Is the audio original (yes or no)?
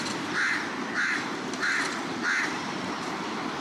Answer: no